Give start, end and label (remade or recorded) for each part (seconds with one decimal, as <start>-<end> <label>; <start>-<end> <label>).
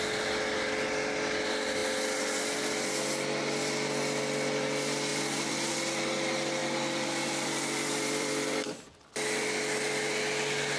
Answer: 0.0-5.1 recorded; 5.1-5.7 remade; 5.7-6.6 recorded; 6.6-9.1 remade; 9.1-10.8 recorded